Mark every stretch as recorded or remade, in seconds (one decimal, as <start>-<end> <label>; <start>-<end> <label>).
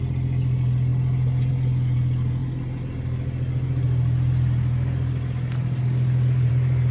0.0-6.9 recorded